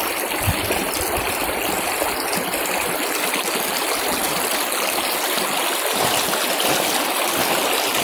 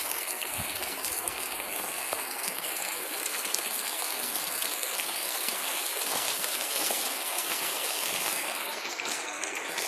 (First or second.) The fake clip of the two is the second